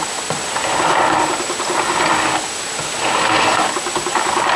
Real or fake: real